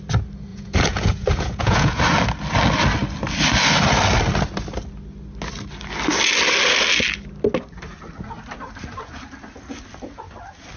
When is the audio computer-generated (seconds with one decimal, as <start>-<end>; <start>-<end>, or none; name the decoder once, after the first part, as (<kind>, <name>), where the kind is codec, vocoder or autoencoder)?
0.5-2.0 (vocoder, Vocos)